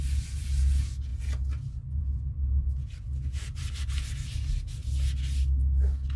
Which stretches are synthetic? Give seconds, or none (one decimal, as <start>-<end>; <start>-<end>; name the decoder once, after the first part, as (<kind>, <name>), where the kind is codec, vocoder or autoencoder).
none